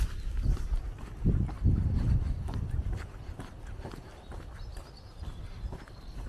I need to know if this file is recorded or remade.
recorded